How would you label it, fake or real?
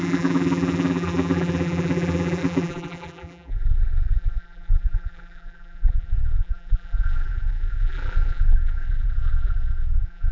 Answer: fake